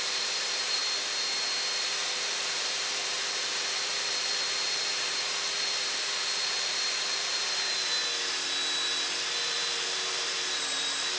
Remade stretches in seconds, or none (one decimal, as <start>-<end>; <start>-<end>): 0.0-0.8; 1.8-8.0; 9.5-11.2